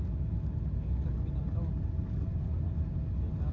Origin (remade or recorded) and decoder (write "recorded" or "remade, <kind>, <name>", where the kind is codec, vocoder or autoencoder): recorded